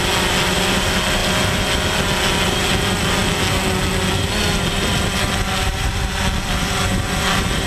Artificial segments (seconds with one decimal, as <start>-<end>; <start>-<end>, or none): none